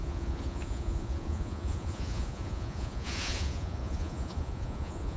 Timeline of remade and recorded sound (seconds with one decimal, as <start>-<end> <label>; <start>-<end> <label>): 0.0-5.2 remade